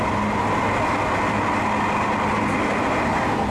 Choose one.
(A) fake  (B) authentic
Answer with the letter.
B